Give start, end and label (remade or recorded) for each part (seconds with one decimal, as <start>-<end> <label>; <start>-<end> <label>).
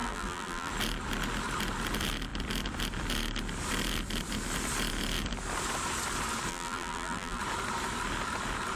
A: 0.0-0.7 remade; 0.7-6.5 recorded; 6.5-7.4 remade; 7.4-8.8 recorded